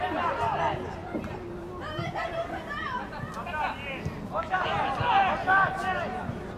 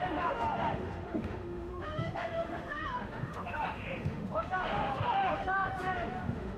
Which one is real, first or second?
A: first